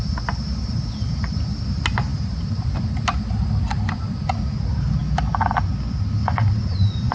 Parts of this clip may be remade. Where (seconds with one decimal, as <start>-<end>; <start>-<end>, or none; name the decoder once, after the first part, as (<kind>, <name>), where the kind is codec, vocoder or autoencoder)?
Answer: 6.2-7.1 (vocoder, Vocos)